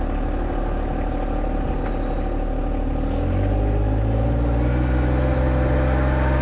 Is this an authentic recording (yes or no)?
yes